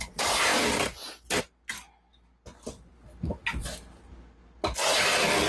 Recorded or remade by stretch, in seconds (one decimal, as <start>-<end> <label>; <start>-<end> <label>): 0.0-5.5 recorded